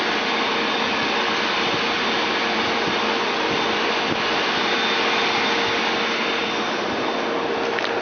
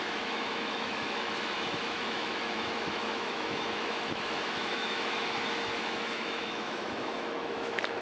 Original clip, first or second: first